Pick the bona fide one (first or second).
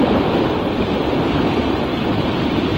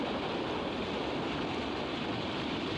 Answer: second